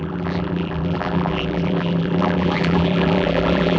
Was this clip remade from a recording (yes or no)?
yes